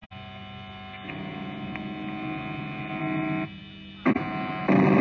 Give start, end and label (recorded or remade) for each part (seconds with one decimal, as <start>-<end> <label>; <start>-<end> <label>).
0.0-3.0 recorded; 3.0-3.6 remade; 3.6-4.6 recorded; 4.6-5.0 remade